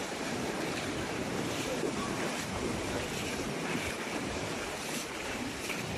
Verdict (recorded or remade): remade